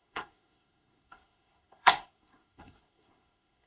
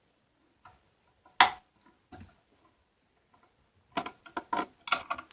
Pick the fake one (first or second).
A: first